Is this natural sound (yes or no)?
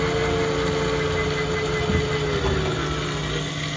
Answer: yes